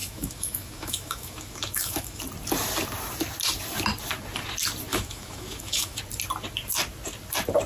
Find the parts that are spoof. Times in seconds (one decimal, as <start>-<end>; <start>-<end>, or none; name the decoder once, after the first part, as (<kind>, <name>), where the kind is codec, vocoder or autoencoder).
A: 0.0-2.2 (autoencoder, DAC-VAE); 4.9-6.0